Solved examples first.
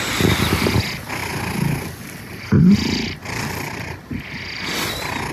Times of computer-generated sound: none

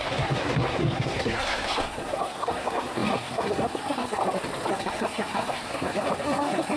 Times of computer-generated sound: 0.0-4.2 (codec, SNAC); 4.7-6.8

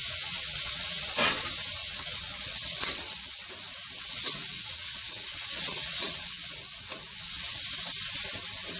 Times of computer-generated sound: 0.0-1.4 (vocoder, WaveNeXt); 1.8-3.5; 4.0-7.6

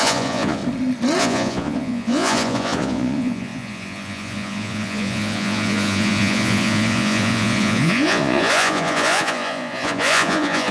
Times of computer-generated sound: 0.0-0.6 (vocoder, Vocos); 1.2-10.7

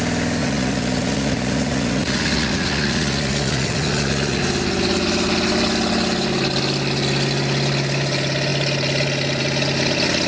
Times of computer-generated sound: 0.4-4.4 (vocoder, Vocos)

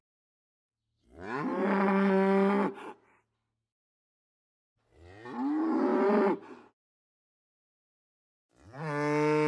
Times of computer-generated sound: none

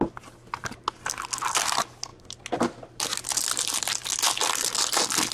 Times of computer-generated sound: none